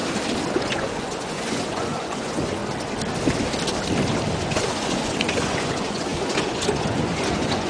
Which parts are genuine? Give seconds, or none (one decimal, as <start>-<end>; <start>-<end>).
0.0-0.5; 2.6-4.4